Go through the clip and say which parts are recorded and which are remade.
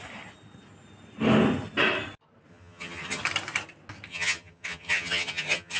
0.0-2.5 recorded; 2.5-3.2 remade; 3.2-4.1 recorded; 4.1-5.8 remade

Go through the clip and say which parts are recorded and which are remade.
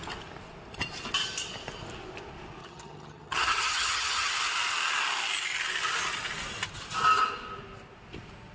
0.0-2.6 recorded; 2.6-4.3 remade; 4.3-8.5 recorded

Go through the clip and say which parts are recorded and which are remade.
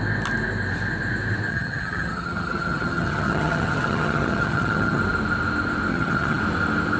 0.0-1.5 recorded; 1.5-5.0 remade; 5.0-5.9 recorded; 5.9-6.4 remade; 6.4-7.0 recorded